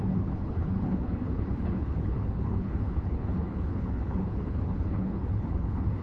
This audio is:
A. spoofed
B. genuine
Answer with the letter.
A